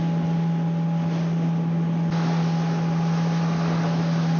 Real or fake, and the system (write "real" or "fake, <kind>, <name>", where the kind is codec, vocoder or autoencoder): real